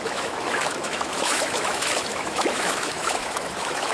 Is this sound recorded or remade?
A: remade